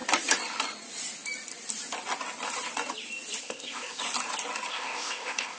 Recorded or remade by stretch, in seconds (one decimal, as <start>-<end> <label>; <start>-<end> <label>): 0.0-3.4 recorded; 3.4-4.0 remade; 4.0-4.7 recorded; 4.7-5.6 remade